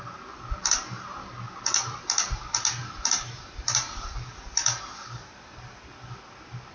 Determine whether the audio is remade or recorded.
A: remade